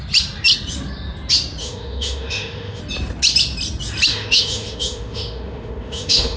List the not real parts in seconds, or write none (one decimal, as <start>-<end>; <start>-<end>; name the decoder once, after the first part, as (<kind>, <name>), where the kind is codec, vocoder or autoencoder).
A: 1.6-2.8 (autoencoder, DAC-VAE); 4.1-6.4